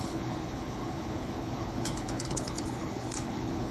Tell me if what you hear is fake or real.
fake